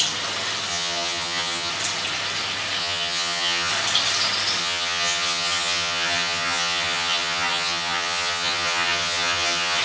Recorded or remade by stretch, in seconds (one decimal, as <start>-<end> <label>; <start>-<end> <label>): 0.0-0.7 recorded; 0.7-1.7 remade; 1.7-2.8 recorded; 2.8-3.7 remade; 3.7-4.6 recorded; 4.6-9.8 remade